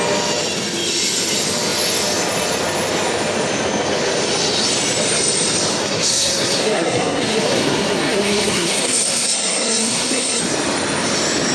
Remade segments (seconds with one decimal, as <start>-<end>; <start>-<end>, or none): 5.7-10.4